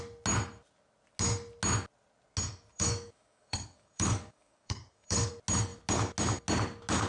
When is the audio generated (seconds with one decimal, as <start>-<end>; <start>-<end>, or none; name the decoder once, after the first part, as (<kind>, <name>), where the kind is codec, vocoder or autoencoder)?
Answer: 2.7-5.3 (codec, DAC)